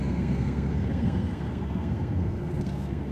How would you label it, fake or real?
fake